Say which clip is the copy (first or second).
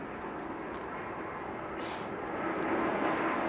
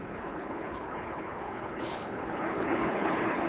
second